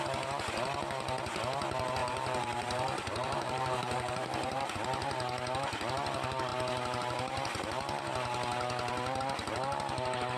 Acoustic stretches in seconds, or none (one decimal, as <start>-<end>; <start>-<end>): 0.0-2.0; 4.7-10.4